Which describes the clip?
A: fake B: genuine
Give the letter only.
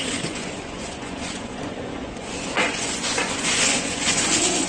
A